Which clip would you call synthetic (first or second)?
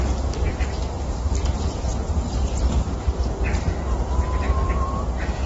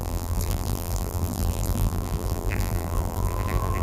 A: second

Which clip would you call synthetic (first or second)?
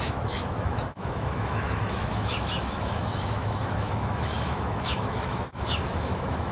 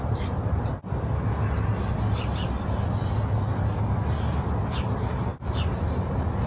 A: first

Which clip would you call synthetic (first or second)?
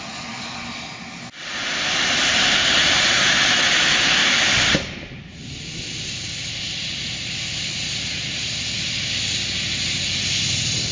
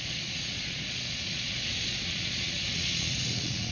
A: second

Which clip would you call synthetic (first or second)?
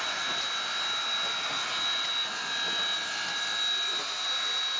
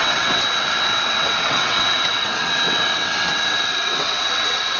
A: second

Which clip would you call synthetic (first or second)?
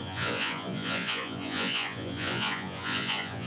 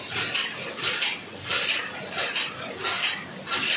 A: first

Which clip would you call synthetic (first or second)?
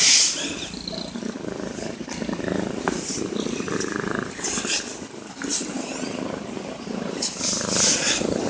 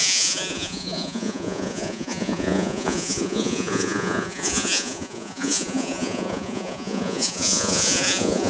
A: second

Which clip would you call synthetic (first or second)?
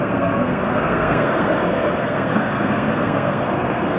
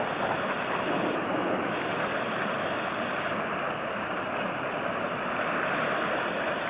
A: first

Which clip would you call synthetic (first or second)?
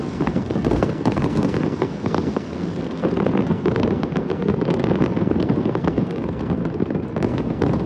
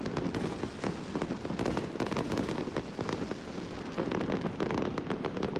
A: first